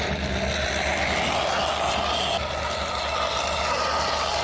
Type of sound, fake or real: real